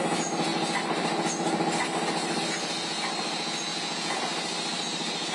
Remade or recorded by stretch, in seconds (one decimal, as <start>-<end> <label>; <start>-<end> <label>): 0.0-3.7 recorded; 3.7-4.2 remade; 4.2-5.3 recorded